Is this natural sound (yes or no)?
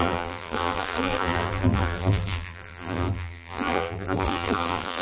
no